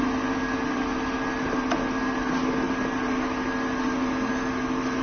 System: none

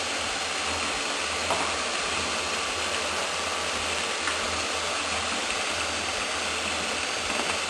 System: none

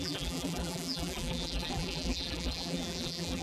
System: vocoder, BigVGAN v2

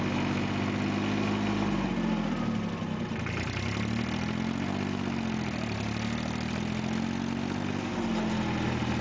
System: none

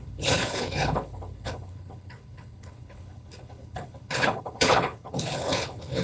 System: codec, HILCodec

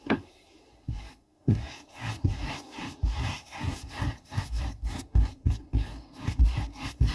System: codec, SNAC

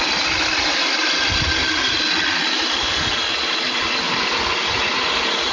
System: none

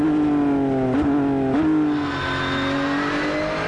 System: none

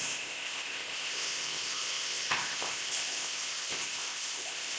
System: codec, ZipCodec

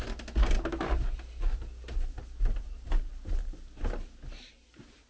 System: none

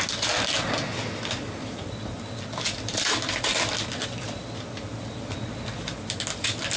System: none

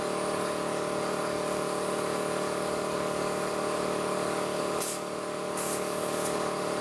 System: codec, DAC